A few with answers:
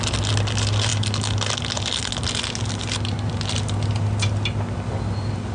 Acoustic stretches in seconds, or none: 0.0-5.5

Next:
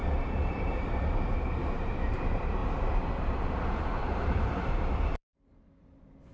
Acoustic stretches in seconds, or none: 2.6-3.2

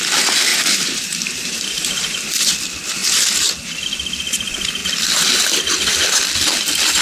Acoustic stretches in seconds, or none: 0.0-0.5; 2.5-7.0